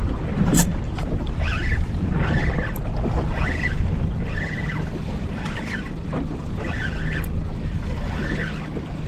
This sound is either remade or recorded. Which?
recorded